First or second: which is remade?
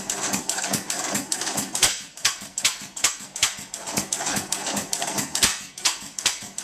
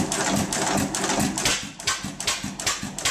first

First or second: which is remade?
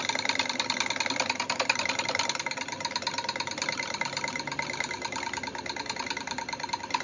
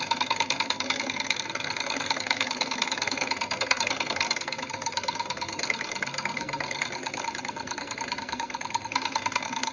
second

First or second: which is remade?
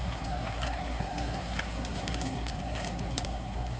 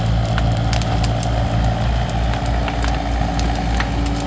first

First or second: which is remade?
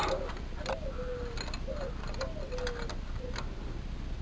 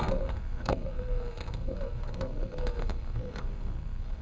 second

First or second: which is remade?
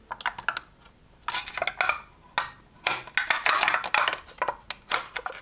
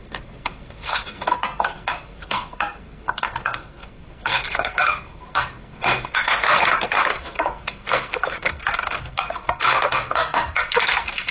second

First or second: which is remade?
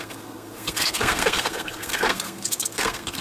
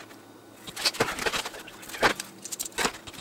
first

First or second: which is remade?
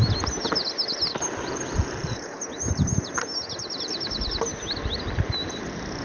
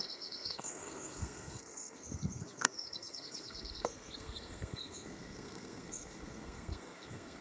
second